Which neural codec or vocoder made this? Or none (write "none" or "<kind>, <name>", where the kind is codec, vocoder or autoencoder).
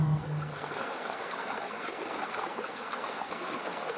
codec, SNAC